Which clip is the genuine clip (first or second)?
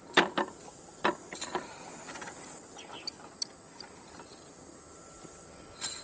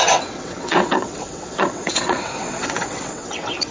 first